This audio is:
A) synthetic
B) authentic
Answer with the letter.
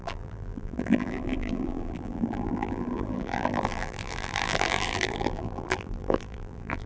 A